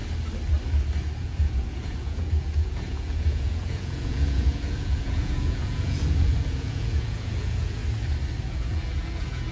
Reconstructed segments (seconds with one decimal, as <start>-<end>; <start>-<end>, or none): 1.2-7.8; 8.4-9.5